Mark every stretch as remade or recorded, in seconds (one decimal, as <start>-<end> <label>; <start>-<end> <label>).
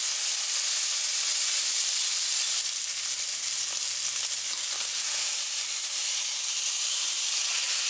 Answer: 0.0-4.9 recorded; 4.9-7.3 remade; 7.3-7.9 recorded